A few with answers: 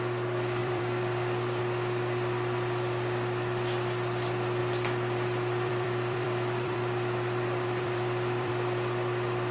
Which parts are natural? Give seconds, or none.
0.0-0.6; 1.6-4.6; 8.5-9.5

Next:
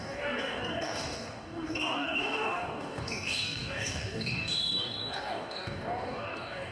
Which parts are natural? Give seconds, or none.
none

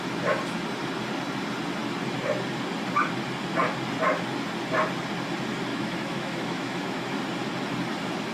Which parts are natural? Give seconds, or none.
0.0-5.7; 7.2-8.3

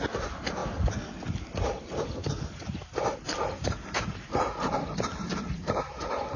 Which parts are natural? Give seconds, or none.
0.0-6.4

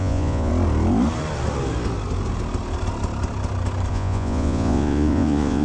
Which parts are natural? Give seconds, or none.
0.5-3.9

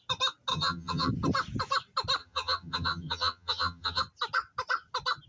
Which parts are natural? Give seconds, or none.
0.0-0.5; 1.1-2.2; 4.0-5.3

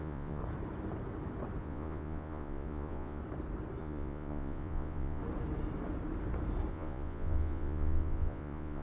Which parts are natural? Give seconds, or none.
0.4-1.6; 3.2-3.8; 5.2-6.7